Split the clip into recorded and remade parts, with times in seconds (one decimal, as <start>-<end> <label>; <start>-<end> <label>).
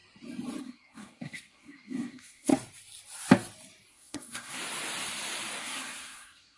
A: 0.0-0.6 recorded; 0.6-2.5 remade; 2.5-3.9 recorded; 3.9-4.6 remade; 4.6-5.6 recorded; 5.6-6.6 remade